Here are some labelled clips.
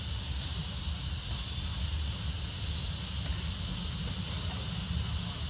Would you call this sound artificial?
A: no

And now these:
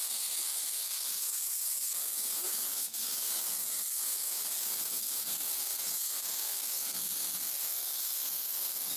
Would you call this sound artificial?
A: yes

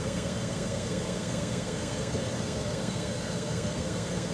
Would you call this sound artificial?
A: yes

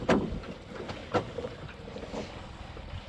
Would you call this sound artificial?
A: no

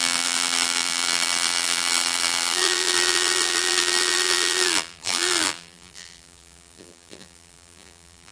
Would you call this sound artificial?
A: yes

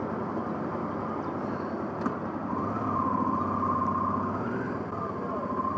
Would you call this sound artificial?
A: no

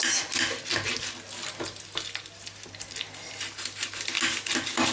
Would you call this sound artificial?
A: no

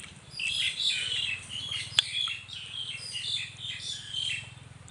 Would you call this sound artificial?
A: yes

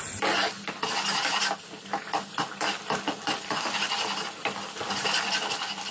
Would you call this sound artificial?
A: no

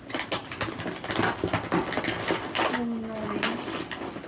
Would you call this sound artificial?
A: no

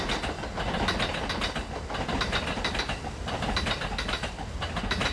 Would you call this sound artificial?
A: no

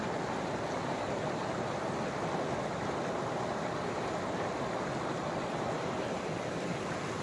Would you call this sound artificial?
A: no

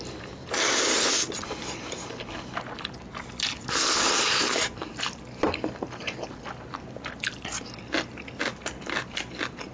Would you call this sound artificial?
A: yes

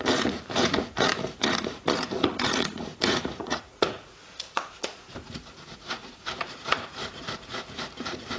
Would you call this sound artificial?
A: yes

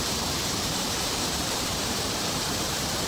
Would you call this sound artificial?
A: yes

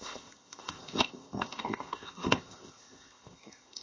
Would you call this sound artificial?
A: yes